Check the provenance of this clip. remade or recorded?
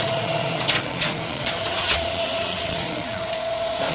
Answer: remade